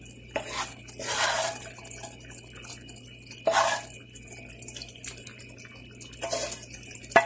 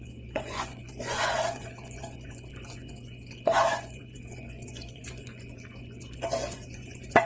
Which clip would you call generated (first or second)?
second